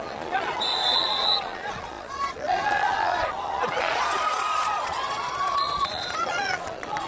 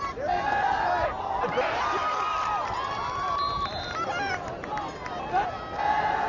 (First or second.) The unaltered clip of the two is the second